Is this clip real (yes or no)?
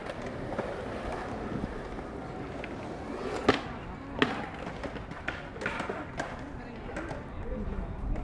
yes